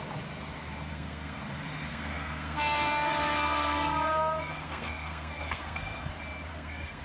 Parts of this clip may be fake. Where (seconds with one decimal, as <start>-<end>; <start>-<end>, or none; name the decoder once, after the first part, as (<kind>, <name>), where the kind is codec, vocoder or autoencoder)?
0.9-1.4 (codec, SNAC); 1.9-6.1; 6.5-7.0